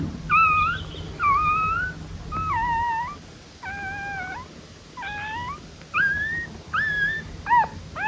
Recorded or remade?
recorded